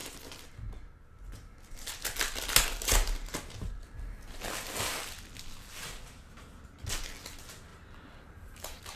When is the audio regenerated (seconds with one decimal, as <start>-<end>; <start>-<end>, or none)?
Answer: 7.7-9.0